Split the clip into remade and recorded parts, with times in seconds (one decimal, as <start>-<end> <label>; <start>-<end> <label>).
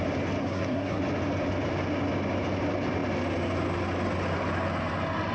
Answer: 0.0-0.4 recorded; 0.4-1.0 remade; 1.0-5.3 recorded